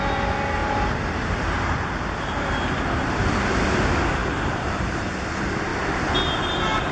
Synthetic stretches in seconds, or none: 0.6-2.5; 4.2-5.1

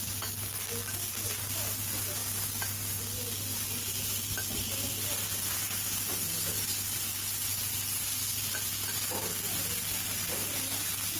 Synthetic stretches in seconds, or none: none

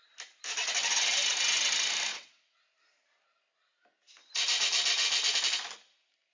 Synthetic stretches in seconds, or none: 2.1-2.6

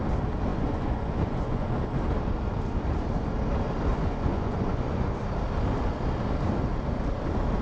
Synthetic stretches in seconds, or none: 0.5-1.7; 3.9-5.2

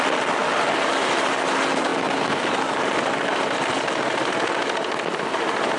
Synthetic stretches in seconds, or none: none

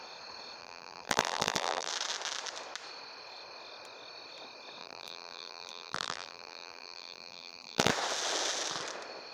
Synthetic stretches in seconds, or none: 0.6-1.9; 4.8-7.9

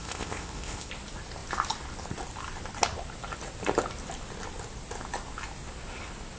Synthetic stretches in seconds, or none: 0.0-0.9